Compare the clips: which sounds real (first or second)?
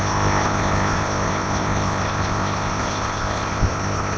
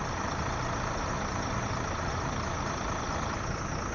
second